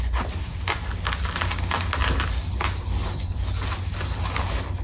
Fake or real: real